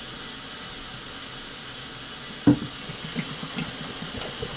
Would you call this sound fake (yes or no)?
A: no